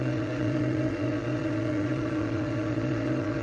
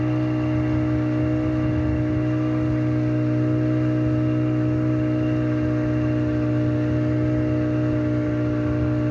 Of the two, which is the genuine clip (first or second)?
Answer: second